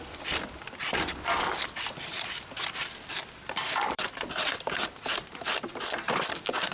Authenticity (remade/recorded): remade